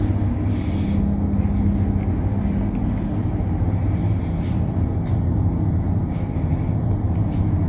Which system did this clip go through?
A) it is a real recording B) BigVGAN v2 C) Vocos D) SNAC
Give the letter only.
A